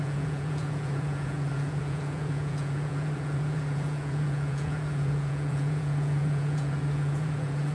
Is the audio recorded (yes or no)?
no